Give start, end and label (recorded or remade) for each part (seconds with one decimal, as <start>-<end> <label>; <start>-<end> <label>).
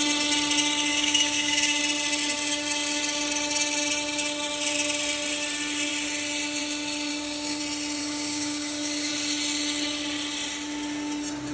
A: 0.0-0.9 recorded; 0.9-1.8 remade; 1.8-7.1 recorded; 7.1-7.6 remade; 7.6-8.0 recorded; 8.0-9.1 remade; 9.1-11.5 recorded